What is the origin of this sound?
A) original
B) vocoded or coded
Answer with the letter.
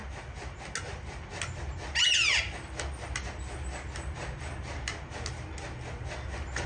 A